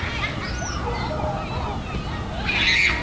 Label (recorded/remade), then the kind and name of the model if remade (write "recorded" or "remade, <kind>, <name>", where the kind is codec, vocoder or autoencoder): recorded